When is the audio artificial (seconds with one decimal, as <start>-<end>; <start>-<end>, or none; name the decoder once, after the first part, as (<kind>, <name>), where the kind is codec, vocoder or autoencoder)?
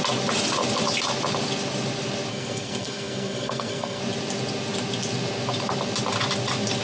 2.3-4.0 (codec, SNAC)